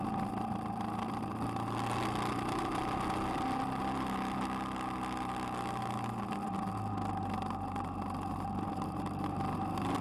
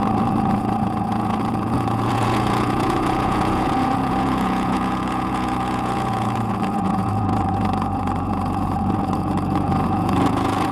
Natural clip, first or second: first